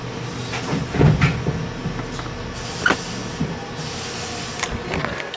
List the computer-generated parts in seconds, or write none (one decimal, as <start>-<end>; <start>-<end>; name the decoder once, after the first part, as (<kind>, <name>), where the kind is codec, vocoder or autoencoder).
none